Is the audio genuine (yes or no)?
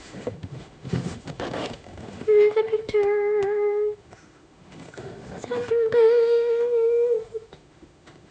no